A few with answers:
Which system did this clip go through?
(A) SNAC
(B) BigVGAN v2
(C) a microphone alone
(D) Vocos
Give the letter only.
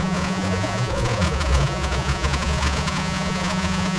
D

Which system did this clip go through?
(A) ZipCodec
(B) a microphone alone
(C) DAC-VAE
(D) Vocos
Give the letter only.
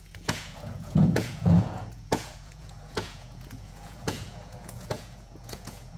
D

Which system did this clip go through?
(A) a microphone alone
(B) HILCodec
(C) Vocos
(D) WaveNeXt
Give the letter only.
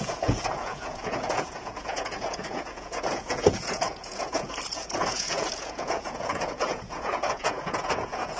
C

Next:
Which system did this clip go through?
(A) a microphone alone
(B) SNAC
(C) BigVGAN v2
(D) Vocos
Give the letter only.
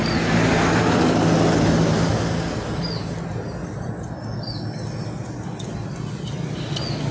A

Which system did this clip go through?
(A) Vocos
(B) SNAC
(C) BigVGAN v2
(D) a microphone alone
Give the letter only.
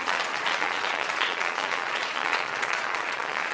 A